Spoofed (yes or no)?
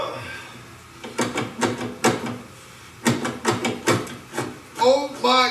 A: no